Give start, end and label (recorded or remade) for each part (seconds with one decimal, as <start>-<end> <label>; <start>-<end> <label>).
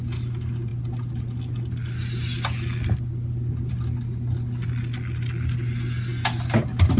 0.0-7.0 recorded